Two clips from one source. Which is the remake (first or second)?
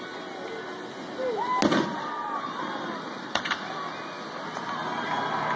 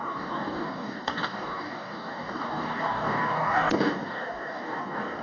second